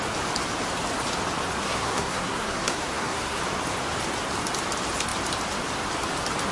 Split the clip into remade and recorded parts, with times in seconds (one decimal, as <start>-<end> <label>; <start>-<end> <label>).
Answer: 0.0-1.6 recorded; 1.6-3.4 remade; 3.4-6.5 recorded